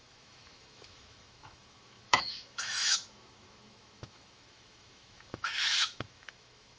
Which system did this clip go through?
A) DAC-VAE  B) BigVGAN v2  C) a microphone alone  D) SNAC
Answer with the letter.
A